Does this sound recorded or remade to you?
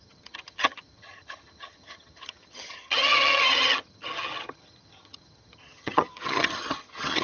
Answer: remade